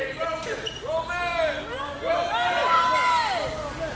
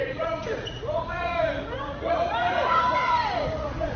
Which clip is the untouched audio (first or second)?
first